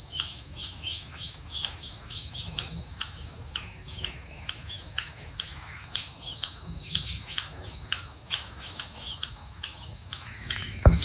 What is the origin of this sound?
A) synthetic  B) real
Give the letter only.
A